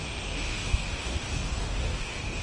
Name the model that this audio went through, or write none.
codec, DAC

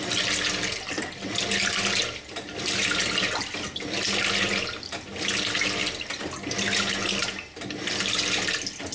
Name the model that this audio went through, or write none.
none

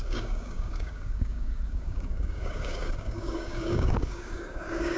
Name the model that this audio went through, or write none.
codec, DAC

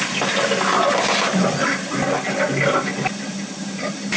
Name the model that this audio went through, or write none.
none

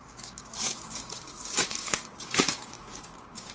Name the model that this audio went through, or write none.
codec, DAC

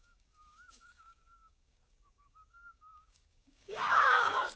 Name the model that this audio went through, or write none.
codec, DAC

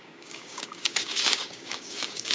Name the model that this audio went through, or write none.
codec, DAC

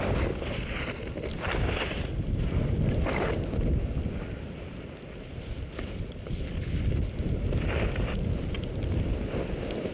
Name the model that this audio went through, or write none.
none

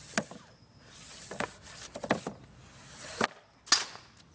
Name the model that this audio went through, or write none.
none